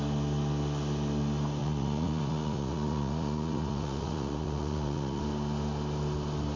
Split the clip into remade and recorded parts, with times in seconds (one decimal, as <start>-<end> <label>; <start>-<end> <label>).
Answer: 0.0-1.6 recorded; 1.6-5.2 remade; 5.2-6.6 recorded